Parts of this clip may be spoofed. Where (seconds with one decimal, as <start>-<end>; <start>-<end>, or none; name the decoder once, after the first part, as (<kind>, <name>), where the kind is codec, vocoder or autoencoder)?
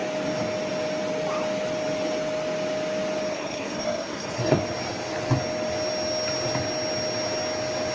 3.3-4.6 (codec, SNAC)